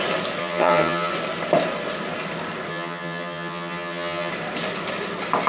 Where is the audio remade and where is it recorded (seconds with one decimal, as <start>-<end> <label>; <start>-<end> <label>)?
0.0-0.4 recorded; 0.4-1.1 remade; 1.1-2.7 recorded; 2.7-4.3 remade; 4.3-5.5 recorded